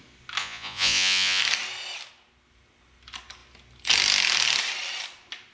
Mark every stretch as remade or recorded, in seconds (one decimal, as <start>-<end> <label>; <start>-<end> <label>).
0.0-0.4 recorded; 0.4-1.4 remade; 1.4-5.5 recorded